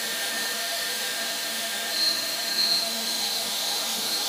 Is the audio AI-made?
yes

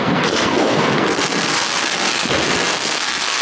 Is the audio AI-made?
yes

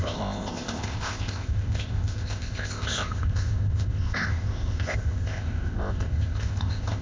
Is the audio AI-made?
yes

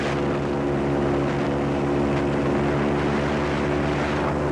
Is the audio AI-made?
no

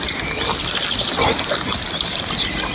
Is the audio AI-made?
no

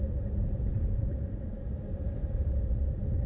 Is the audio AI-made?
yes